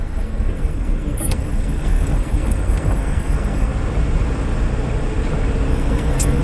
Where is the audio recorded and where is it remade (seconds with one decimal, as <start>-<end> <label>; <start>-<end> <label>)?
0.0-3.7 remade; 3.7-5.7 recorded; 5.7-6.4 remade